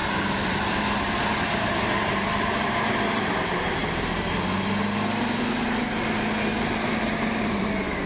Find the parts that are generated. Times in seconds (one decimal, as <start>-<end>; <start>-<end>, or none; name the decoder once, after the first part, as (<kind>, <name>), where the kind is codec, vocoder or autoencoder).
0.0-3.8 (vocoder, BigVGAN v2); 7.0-8.1